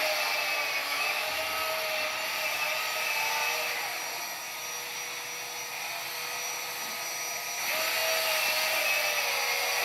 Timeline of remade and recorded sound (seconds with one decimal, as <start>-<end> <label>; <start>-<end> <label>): 0.0-0.8 recorded; 0.8-1.4 remade; 1.4-9.8 recorded